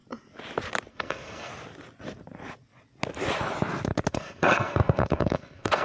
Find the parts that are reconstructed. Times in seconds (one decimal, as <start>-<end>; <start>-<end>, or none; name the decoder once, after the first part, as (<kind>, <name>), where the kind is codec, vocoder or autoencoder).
0.9-1.5 (codec, SNAC); 4.1-5.8